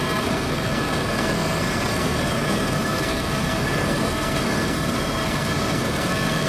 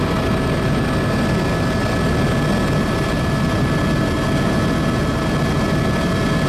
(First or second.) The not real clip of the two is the first